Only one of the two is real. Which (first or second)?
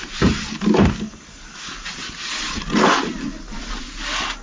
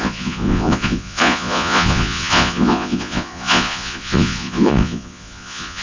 first